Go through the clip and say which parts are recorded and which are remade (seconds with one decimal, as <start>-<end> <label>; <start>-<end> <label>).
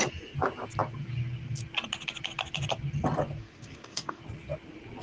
0.0-3.4 recorded; 3.4-4.2 remade; 4.2-5.0 recorded